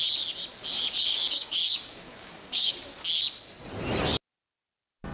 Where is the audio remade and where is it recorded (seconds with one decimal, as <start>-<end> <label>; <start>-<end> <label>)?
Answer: 0.0-1.1 recorded; 1.1-2.7 remade; 2.7-5.1 recorded